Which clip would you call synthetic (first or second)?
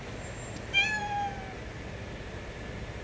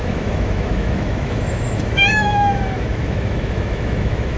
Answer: second